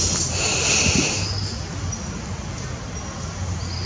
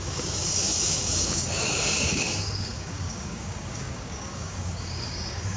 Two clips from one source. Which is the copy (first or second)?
second